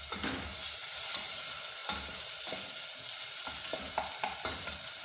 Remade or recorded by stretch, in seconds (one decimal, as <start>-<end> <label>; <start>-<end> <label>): 0.0-5.0 recorded